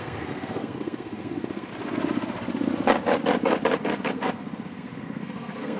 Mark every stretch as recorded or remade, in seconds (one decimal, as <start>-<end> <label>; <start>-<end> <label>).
0.0-1.7 remade; 1.7-4.1 recorded; 4.1-5.8 remade